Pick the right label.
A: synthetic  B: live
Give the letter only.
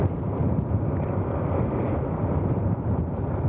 B